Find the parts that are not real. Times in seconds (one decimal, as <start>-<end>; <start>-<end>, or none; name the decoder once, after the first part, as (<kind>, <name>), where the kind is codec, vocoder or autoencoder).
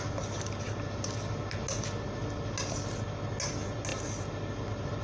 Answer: none